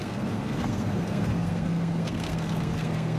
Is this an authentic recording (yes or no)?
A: no